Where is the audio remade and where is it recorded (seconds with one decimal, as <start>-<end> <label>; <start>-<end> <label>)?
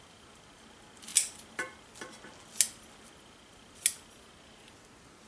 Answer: 0.0-5.3 recorded